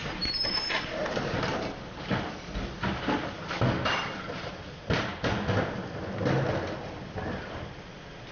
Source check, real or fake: real